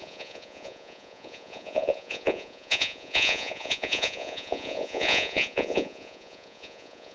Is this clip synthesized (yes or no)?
yes